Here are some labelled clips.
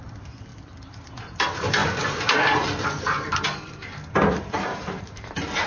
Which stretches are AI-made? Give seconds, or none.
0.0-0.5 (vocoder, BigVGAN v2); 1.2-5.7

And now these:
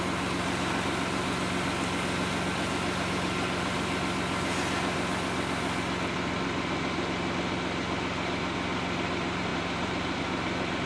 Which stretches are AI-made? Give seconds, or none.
9.5-10.2 (vocoder, BigVGAN v2)

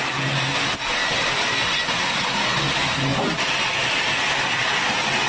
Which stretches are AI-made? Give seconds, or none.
1.0-1.5 (vocoder, BigVGAN v2); 3.1-4.4

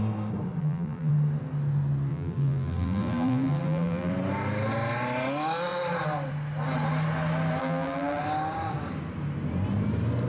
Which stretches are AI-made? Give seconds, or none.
0.6-1.1 (vocoder, BigVGAN v2); 2.1-4.1; 7.6-8.2